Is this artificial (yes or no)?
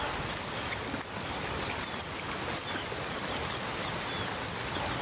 no